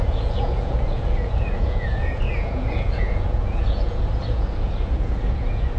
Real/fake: fake